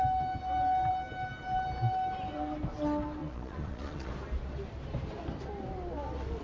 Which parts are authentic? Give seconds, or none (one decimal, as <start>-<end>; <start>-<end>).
0.0-3.2; 4.1-6.4